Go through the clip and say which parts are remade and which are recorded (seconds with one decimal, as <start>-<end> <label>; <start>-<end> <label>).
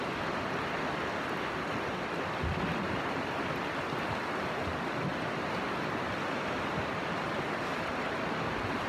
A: 0.0-8.9 recorded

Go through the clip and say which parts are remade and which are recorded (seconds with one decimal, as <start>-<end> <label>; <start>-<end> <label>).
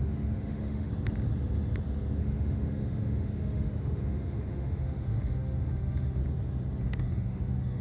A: 0.0-0.9 remade; 0.9-2.2 recorded; 2.2-6.2 remade; 6.2-6.8 recorded; 6.8-7.8 remade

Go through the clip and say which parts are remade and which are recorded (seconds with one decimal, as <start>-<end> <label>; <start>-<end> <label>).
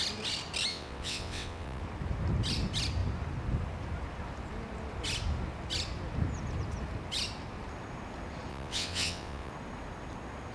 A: 0.0-0.7 recorded; 0.7-1.8 remade; 1.8-8.5 recorded; 8.5-9.5 remade; 9.5-10.5 recorded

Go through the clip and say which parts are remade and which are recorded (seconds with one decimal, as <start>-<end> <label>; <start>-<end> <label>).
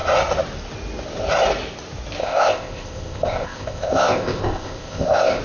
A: 0.0-2.2 recorded; 2.2-5.4 remade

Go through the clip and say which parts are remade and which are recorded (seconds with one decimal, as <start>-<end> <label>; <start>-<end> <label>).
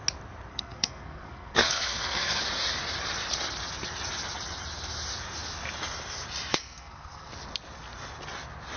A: 0.0-0.5 recorded; 0.5-2.4 remade; 2.4-6.5 recorded; 6.5-7.3 remade; 7.3-8.8 recorded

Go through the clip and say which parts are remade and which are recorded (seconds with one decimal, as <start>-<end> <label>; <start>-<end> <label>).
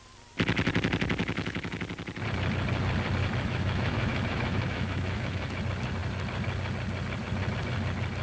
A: 0.0-1.2 recorded; 1.2-1.8 remade; 1.8-3.2 recorded; 3.2-5.6 remade; 5.6-8.2 recorded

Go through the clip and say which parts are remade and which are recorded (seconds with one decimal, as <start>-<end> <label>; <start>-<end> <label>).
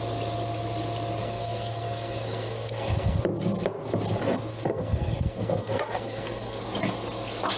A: 0.0-1.2 recorded; 1.2-3.2 remade; 3.2-4.5 recorded; 4.5-6.6 remade; 6.6-7.6 recorded